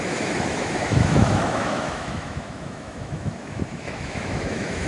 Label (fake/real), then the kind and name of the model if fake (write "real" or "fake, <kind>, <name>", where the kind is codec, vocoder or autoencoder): fake, autoencoder, DAC-VAE